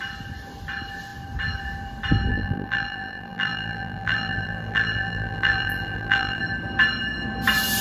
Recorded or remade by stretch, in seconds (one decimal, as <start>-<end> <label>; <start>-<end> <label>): 0.0-2.3 recorded; 2.3-6.4 remade; 6.4-7.8 recorded